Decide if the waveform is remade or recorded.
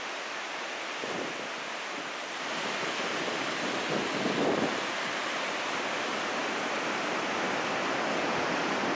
recorded